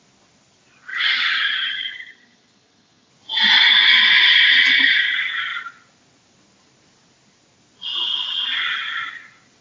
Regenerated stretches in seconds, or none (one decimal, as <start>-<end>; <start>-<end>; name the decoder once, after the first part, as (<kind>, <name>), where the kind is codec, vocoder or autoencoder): 0.9-3.1 (vocoder, HiFi-GAN)